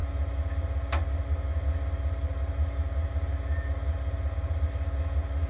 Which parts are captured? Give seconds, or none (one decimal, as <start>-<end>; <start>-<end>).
0.0-5.5